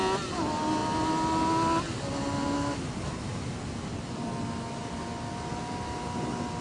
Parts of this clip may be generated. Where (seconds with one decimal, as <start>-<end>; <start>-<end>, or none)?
none